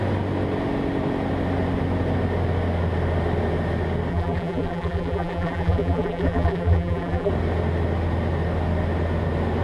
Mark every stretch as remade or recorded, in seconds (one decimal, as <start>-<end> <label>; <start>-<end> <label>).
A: 0.0-4.1 recorded; 4.1-7.3 remade; 7.3-9.6 recorded